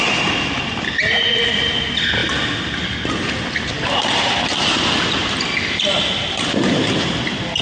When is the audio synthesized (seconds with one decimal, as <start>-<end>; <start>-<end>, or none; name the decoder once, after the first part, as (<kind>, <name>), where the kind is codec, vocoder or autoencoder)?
none